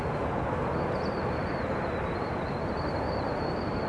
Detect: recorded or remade remade